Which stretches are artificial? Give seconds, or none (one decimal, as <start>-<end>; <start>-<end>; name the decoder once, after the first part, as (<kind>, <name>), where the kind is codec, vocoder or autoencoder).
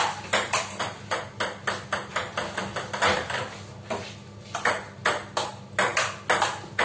none